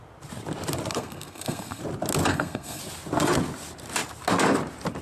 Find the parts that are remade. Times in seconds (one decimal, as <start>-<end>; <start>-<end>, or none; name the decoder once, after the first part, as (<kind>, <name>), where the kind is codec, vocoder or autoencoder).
0.9-1.8 (codec, SNAC); 2.3-2.8